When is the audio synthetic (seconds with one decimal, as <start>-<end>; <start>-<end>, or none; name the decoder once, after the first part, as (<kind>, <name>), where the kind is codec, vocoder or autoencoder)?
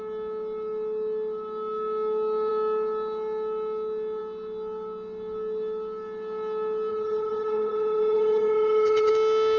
6.9-9.1 (vocoder, HiFi-GAN)